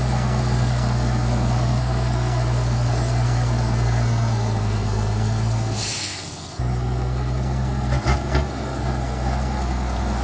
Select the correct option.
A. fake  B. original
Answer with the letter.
A